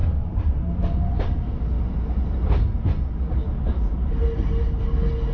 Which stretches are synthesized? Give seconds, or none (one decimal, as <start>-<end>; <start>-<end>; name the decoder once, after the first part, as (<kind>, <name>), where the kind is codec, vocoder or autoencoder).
none